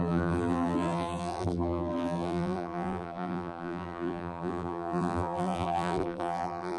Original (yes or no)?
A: no